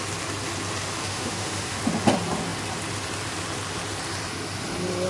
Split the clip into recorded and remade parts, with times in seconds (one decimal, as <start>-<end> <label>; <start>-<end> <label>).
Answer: 0.0-1.0 recorded; 1.0-1.8 remade; 1.8-5.1 recorded